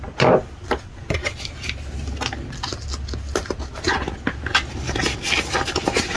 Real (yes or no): yes